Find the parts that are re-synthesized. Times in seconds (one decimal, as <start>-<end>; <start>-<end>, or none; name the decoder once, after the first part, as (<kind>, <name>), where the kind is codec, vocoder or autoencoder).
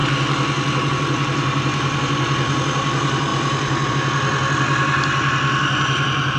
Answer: none